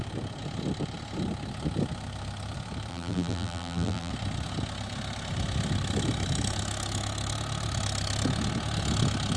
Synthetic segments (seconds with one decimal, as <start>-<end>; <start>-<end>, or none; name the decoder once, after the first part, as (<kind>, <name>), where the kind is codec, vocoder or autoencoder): 2.9-4.1 (vocoder, BigVGAN v2)